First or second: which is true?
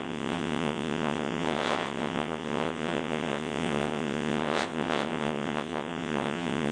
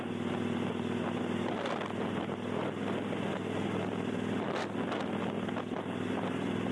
second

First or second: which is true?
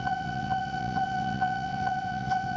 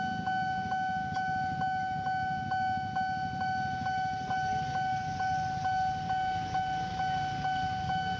second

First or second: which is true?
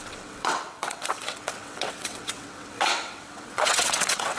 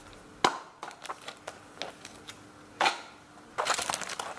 second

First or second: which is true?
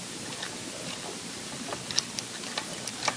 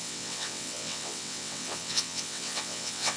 first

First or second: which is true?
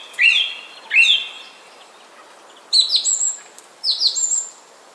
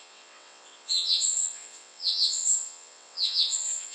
first